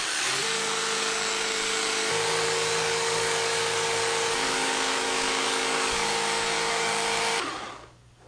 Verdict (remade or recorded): remade